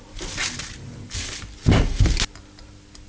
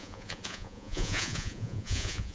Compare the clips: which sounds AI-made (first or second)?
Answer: second